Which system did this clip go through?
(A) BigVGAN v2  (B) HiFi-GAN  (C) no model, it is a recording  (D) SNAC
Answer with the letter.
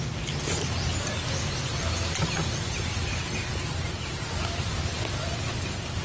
C